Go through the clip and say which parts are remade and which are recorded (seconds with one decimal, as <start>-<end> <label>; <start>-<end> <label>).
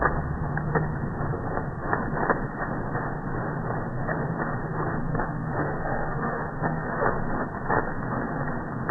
0.0-5.1 recorded; 5.1-7.0 remade; 7.0-8.9 recorded